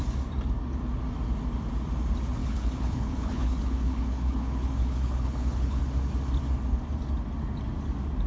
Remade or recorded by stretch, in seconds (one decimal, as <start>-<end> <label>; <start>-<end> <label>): 0.0-2.4 recorded; 2.4-5.8 remade; 5.8-8.3 recorded

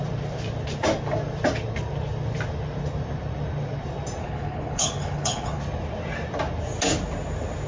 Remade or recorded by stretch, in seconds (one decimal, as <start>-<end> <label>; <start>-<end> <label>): 0.0-4.2 recorded; 4.2-5.6 remade; 5.6-7.7 recorded

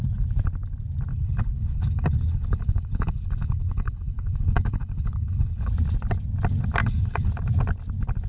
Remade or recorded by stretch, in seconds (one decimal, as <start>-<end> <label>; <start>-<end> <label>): 0.0-1.1 recorded; 1.1-5.7 remade; 5.7-6.8 recorded; 6.8-7.3 remade; 7.3-8.3 recorded

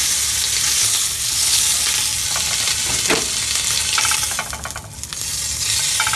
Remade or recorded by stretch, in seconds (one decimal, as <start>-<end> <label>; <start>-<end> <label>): 0.0-0.8 recorded; 0.8-1.6 remade; 1.6-6.2 recorded

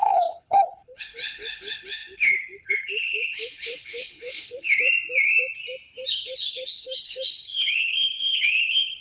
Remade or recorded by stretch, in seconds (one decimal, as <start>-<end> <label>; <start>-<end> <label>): 0.0-4.8 remade; 4.8-6.1 recorded; 6.1-9.0 remade

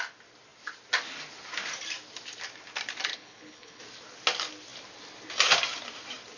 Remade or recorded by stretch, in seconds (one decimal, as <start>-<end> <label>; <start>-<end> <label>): 0.0-3.1 recorded; 3.1-3.8 remade; 3.8-6.4 recorded

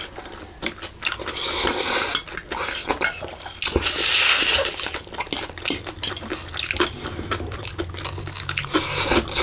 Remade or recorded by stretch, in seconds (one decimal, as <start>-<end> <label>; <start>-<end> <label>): 0.0-9.4 recorded

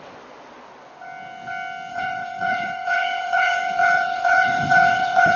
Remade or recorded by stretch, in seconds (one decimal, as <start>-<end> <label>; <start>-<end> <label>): 0.0-1.9 recorded; 1.9-5.4 remade